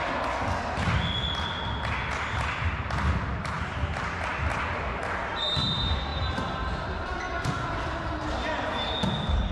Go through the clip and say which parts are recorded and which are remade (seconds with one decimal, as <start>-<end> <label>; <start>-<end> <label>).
0.0-9.5 recorded